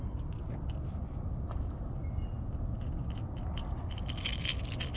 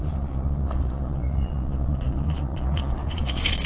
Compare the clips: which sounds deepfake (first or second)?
second